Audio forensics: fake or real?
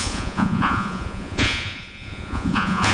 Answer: fake